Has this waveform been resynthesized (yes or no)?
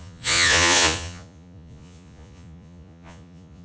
yes